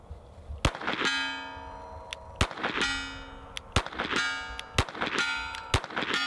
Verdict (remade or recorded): recorded